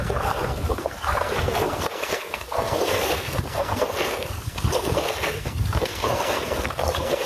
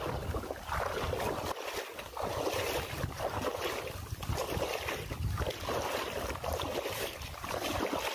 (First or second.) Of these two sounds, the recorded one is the second